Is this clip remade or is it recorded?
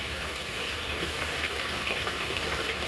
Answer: remade